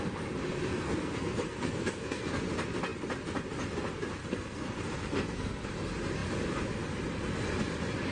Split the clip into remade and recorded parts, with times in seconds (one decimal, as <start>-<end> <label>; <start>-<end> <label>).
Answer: 0.0-0.7 recorded; 0.7-2.3 remade; 2.3-4.2 recorded; 4.2-5.7 remade; 5.7-8.1 recorded